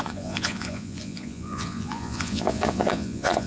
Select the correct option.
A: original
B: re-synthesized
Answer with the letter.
B